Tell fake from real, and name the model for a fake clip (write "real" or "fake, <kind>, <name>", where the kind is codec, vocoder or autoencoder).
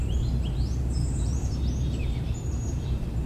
fake, vocoder, BigVGAN v2